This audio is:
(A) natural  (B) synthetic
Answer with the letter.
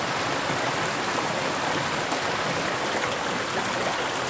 A